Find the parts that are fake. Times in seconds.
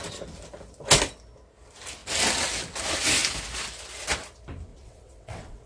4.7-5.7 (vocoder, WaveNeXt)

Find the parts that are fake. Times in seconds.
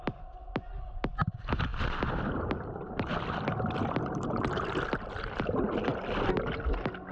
none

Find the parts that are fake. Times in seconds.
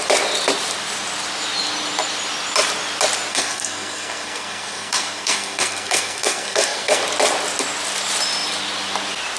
3.3-7.0 (codec, SNAC)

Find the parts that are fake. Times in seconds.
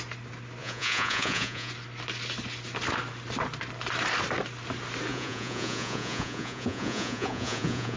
0.6-1.7 (vocoder, Vocos); 5.1-8.0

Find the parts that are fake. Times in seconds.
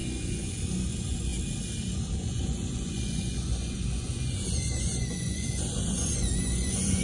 0.0-1.3 (vocoder, Vocos); 2.2-7.0